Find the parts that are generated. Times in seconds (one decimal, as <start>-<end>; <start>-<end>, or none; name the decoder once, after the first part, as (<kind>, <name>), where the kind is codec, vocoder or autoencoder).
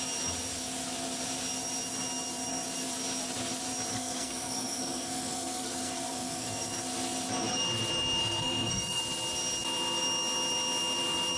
3.9-6.7 (codec, SNAC); 8.2-9.0